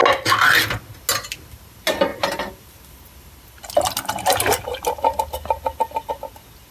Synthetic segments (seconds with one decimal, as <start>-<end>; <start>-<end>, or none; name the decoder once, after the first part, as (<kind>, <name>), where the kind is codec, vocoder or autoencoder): none